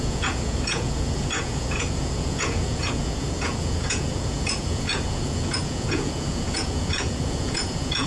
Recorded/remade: remade